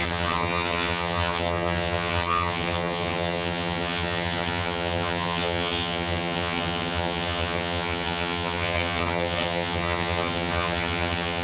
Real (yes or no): no